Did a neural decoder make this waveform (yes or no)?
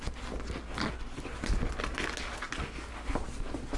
no